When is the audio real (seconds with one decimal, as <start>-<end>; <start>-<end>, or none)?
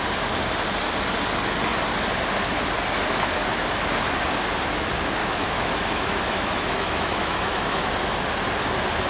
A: 0.0-5.2; 7.9-9.1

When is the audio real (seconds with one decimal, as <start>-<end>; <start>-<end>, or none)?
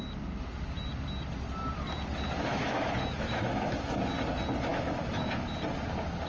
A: 0.0-2.5; 4.1-4.7; 5.5-6.3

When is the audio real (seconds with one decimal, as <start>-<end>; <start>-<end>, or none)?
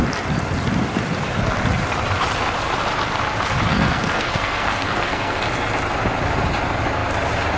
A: 0.0-3.7; 5.4-7.6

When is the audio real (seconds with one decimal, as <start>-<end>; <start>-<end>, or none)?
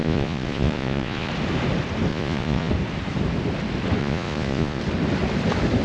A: 1.3-2.1; 2.7-4.0; 4.8-5.8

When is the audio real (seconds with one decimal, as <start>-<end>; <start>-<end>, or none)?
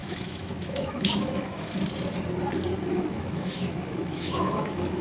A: 1.8-2.9